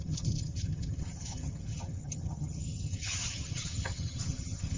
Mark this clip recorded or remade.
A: remade